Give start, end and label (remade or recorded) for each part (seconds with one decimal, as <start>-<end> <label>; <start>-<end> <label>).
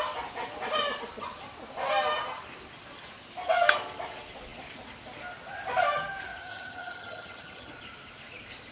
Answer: 0.0-6.4 recorded; 6.4-7.7 remade; 7.7-8.7 recorded